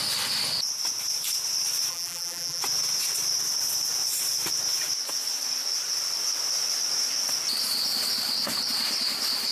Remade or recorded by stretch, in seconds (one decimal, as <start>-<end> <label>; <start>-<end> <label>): 0.0-1.9 recorded; 1.9-2.6 remade; 2.6-9.5 recorded